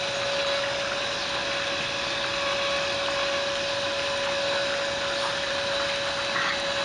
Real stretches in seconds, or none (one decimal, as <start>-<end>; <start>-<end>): 0.0-6.8